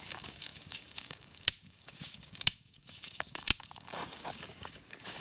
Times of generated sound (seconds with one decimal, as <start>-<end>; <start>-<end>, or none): 0.0-5.2